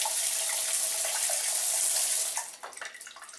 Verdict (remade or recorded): recorded